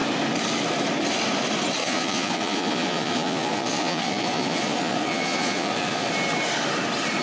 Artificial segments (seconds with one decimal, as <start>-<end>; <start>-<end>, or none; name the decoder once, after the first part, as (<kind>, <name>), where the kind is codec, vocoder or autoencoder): 1.8-6.1 (vocoder, Vocos)